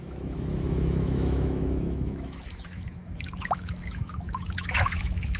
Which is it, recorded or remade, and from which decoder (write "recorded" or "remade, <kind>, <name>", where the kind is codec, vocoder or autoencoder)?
remade, autoencoder, DAC-VAE